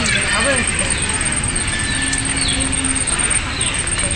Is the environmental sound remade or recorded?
recorded